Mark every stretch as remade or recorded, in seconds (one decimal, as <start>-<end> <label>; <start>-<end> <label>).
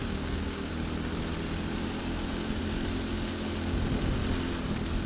0.0-0.7 remade; 0.7-2.0 recorded; 2.0-2.6 remade; 2.6-5.1 recorded